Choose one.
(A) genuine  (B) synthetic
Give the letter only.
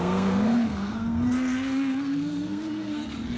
B